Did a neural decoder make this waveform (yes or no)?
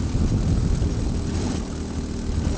no